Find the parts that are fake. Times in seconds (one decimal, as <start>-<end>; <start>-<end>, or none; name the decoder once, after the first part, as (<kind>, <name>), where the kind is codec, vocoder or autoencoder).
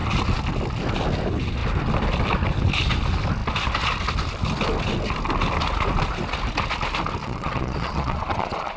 7.2-8.8 (vocoder, Vocos)